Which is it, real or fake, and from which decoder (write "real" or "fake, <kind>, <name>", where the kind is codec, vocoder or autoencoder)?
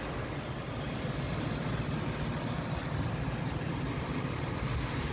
real